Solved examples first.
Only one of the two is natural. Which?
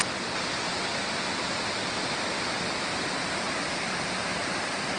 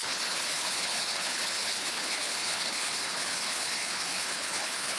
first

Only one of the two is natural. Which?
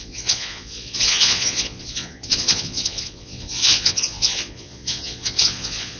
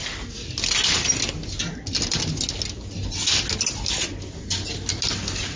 second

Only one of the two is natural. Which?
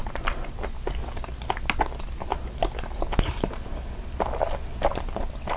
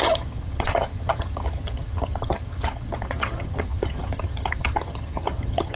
first